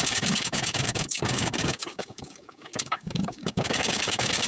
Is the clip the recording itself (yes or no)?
no